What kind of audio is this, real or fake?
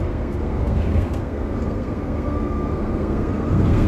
fake